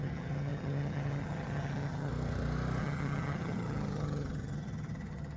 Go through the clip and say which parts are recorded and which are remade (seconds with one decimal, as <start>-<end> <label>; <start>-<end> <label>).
0.0-2.1 remade; 2.1-2.8 recorded; 2.8-5.4 remade